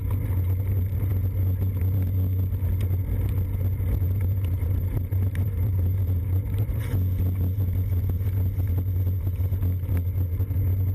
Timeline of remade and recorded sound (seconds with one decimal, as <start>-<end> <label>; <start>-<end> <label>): 0.0-3.9 recorded; 3.9-6.8 remade; 6.8-10.9 recorded